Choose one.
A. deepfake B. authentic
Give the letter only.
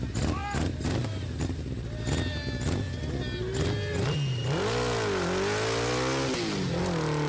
B